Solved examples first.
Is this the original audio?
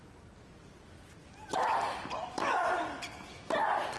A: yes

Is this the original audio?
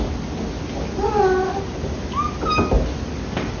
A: yes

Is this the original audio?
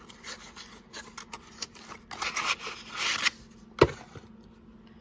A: yes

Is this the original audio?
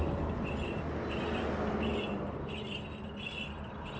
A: yes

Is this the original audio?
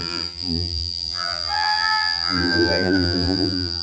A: no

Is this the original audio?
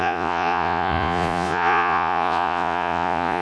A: no